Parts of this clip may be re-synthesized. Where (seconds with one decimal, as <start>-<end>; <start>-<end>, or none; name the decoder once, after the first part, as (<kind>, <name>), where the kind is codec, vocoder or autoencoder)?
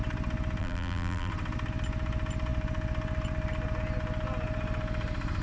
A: 0.6-1.3 (vocoder, BigVGAN v2)